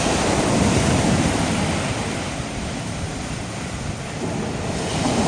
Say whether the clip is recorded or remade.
recorded